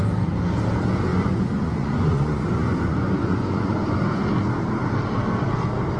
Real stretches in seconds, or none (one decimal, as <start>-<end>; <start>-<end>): 0.0-1.1; 4.2-6.0